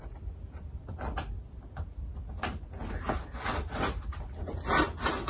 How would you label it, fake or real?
real